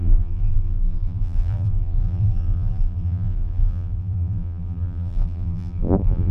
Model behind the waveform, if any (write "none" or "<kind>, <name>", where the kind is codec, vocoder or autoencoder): vocoder, BigVGAN v2